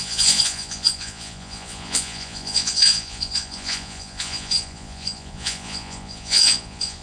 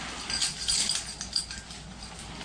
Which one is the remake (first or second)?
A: first